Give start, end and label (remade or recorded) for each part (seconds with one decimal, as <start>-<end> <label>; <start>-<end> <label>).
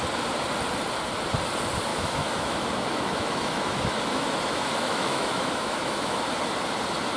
0.0-1.9 recorded; 1.9-6.2 remade; 6.2-7.2 recorded